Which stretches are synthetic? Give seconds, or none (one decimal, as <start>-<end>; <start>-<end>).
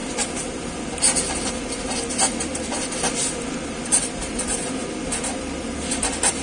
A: none